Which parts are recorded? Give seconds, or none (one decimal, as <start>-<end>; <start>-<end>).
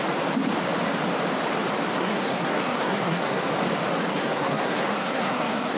0.0-1.9; 3.4-4.1